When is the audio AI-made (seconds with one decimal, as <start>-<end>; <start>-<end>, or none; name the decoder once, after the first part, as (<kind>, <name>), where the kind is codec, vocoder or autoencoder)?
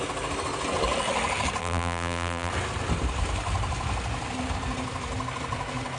1.6-2.5 (vocoder, BigVGAN v2)